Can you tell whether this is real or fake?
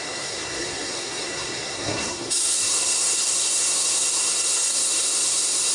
fake